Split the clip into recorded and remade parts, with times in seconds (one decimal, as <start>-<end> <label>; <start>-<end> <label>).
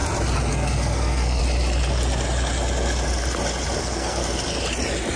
0.0-0.5 recorded; 0.5-1.4 remade; 1.4-3.8 recorded; 3.8-4.2 remade; 4.2-5.2 recorded